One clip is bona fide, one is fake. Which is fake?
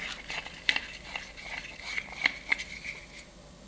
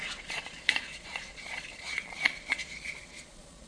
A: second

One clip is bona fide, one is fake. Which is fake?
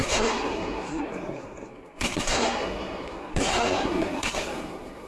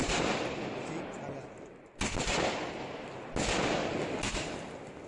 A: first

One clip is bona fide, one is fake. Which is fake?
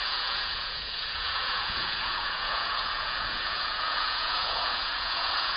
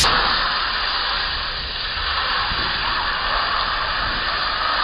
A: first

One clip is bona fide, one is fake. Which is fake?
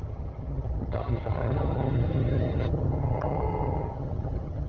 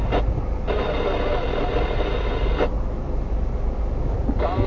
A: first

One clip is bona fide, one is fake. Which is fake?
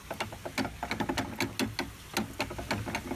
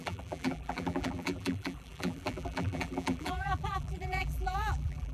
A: second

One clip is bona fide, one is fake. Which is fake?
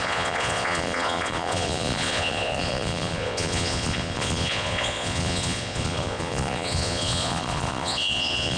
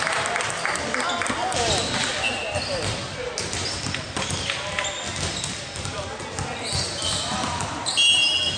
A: first